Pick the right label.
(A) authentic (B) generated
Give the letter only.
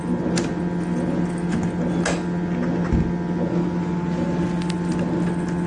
A